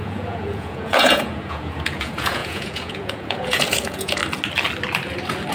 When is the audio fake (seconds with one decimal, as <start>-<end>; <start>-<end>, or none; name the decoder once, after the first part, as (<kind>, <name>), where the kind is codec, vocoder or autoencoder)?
0.0-4.2 (vocoder, Vocos)